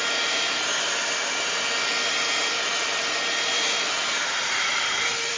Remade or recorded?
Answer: remade